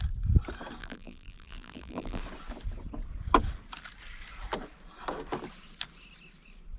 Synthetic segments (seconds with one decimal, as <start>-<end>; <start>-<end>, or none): 0.8-2.2